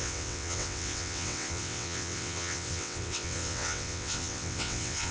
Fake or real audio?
fake